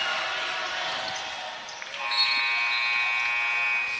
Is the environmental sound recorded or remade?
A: recorded